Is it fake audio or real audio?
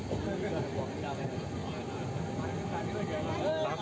real